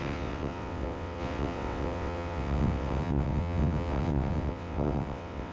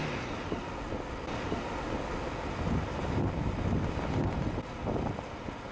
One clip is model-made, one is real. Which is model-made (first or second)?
first